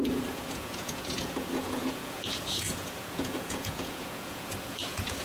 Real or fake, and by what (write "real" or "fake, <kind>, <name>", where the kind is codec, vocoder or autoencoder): fake, vocoder, Vocos